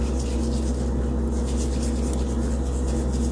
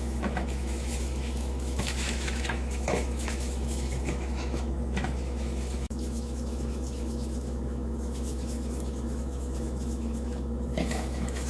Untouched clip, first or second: first